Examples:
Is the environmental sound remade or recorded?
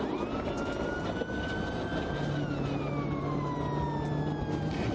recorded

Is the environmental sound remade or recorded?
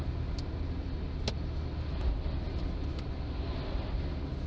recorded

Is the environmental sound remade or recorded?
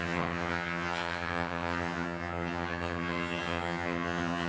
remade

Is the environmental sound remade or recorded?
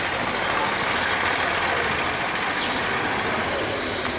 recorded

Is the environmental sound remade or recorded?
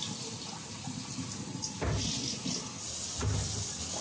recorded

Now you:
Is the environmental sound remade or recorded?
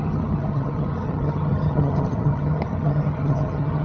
remade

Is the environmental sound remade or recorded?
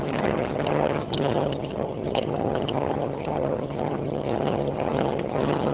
remade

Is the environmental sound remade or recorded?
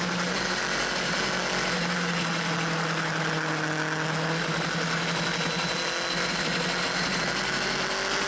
recorded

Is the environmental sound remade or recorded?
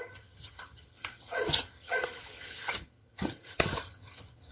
remade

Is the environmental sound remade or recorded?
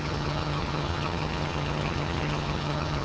remade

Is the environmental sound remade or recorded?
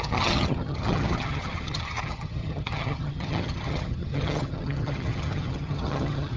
remade